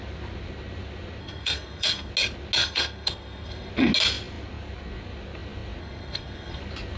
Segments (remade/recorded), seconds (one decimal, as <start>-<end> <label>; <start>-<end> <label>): 0.0-1.2 recorded; 1.2-2.1 remade; 2.1-2.6 recorded; 2.6-3.7 remade; 3.7-5.8 recorded; 5.8-6.6 remade; 6.6-7.0 recorded